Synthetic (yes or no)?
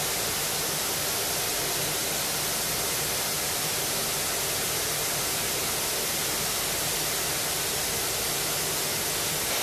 no